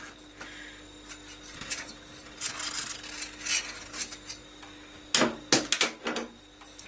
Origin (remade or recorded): recorded